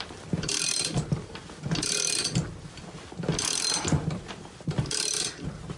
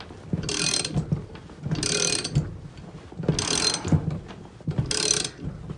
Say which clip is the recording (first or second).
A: second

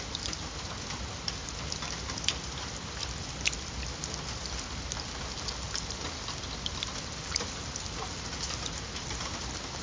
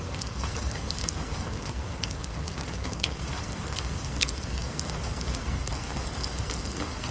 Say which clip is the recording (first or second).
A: first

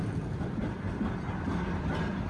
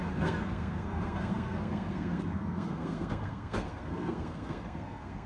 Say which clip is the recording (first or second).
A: first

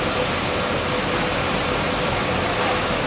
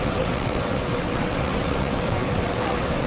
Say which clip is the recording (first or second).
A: first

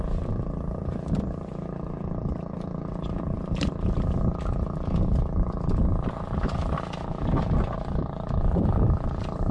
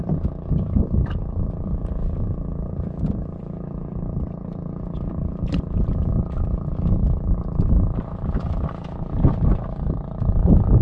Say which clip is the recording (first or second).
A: second